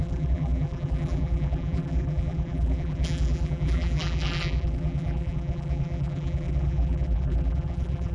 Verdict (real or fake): fake